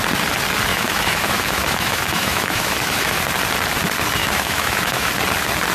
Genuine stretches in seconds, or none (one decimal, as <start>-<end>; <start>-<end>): 0.0-0.7; 3.2-4.2; 5.1-5.7